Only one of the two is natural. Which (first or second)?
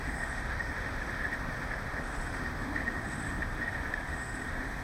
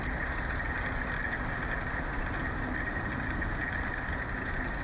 second